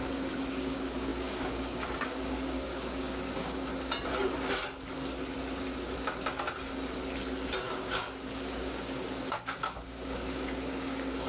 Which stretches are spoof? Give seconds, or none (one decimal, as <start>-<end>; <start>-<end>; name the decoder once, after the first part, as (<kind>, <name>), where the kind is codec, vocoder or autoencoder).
0.0-3.7 (codec, DAC); 7.7-11.3